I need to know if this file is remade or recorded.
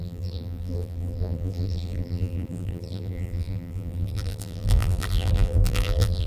remade